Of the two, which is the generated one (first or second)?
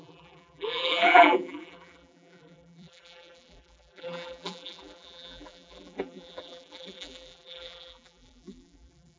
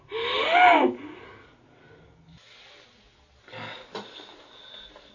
first